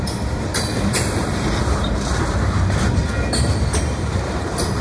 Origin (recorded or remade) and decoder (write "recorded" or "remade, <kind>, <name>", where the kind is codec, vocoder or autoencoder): remade, vocoder, BigVGAN v2